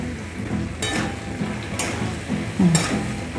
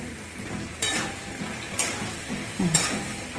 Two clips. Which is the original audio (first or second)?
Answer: first